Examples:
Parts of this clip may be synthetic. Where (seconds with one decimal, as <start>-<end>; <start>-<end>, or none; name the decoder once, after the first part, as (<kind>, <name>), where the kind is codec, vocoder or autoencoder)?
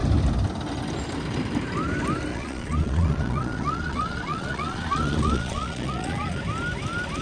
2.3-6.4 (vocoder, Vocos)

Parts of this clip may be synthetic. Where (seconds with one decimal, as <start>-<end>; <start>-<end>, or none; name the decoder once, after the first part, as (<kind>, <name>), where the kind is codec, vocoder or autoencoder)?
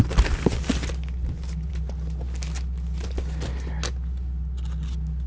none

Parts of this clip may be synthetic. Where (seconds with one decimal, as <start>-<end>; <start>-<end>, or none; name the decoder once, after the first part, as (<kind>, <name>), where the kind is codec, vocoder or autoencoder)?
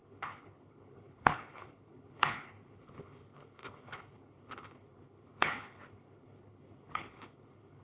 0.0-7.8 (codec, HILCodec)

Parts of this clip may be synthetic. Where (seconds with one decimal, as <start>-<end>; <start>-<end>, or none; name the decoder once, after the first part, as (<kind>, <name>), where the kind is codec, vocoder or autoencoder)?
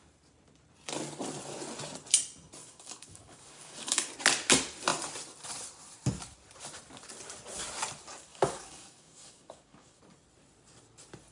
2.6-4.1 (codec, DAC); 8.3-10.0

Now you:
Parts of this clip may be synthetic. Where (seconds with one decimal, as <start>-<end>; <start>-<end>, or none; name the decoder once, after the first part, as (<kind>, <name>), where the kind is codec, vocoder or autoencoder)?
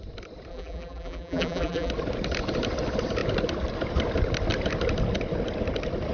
0.5-1.9 (vocoder, BigVGAN v2)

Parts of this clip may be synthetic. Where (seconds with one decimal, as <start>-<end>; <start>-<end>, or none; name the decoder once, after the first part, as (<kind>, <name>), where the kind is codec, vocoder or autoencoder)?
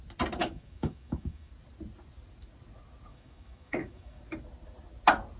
0.4-1.5 (autoencoder, DAC-VAE); 3.1-4.2